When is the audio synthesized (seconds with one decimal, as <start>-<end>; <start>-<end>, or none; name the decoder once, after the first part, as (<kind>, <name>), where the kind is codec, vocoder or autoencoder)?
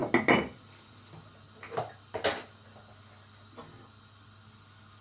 none